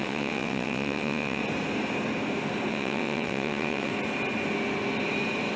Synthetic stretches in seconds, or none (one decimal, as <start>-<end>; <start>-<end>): 0.0-1.4; 2.7-3.9